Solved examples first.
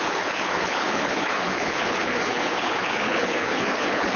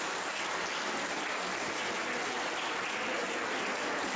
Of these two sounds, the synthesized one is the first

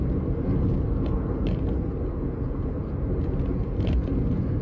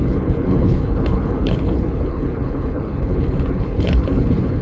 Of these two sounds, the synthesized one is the second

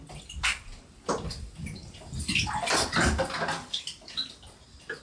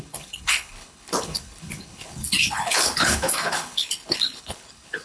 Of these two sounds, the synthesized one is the second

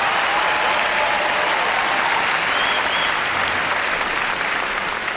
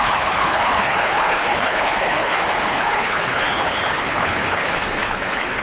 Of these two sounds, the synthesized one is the second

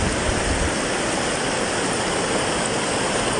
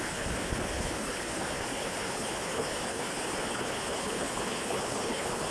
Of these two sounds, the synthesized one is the second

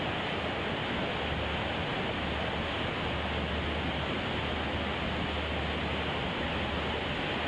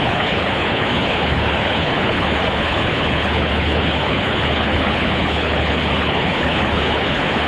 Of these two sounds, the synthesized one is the second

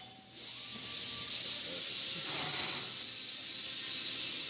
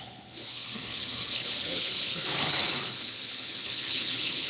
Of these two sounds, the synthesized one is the second